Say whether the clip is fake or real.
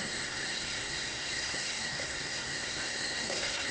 fake